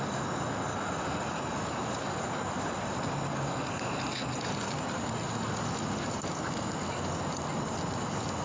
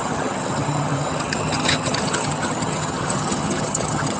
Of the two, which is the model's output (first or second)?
second